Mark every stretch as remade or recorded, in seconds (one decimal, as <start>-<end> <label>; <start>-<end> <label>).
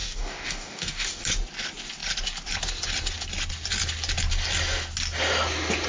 0.0-1.2 remade; 1.2-5.9 recorded